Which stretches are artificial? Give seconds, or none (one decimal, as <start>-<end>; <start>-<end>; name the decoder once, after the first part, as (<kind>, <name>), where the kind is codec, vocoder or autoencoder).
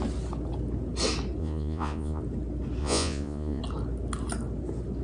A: 1.4-2.2 (vocoder, Vocos); 2.8-3.6